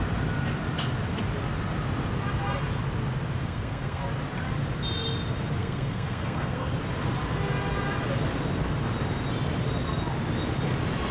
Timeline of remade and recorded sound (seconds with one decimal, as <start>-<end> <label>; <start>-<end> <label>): 0.0-3.4 recorded; 3.4-4.0 remade; 4.0-5.6 recorded; 5.6-6.7 remade; 6.7-11.1 recorded